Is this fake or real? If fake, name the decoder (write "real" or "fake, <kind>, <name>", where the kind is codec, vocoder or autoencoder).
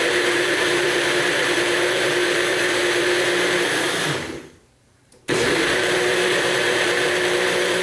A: fake, vocoder, BigVGAN v2